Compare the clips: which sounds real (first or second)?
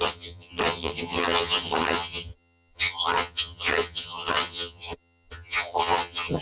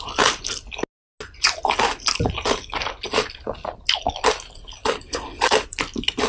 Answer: second